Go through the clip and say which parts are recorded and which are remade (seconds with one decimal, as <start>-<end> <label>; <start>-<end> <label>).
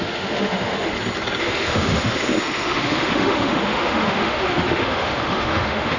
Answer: 0.0-0.9 remade; 0.9-1.4 recorded; 1.4-6.0 remade